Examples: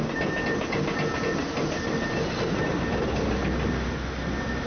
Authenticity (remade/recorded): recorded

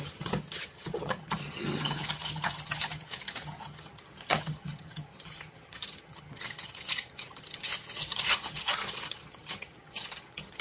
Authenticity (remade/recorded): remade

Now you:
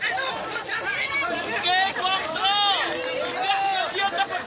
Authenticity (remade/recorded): recorded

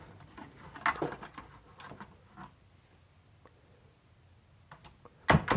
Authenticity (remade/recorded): recorded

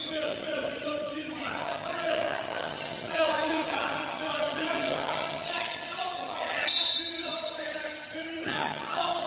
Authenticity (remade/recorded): remade